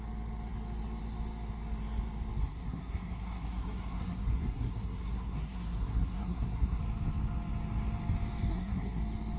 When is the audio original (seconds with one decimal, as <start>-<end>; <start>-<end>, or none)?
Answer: 0.0-2.4; 6.8-8.5; 9.0-9.4